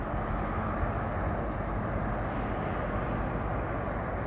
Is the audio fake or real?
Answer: real